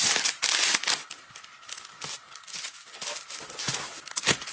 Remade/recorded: recorded